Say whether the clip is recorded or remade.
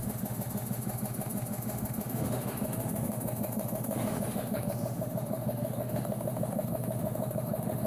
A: remade